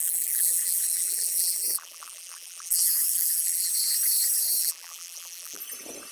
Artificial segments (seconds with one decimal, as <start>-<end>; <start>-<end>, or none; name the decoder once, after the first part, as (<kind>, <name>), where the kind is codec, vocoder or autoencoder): 0.0-3.7 (vocoder, BigVGAN v2); 4.6-5.6